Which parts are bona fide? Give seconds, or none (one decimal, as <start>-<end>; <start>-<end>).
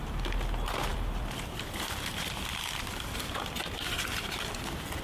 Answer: 0.0-0.9; 3.9-5.0